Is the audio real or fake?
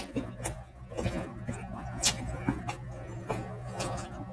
fake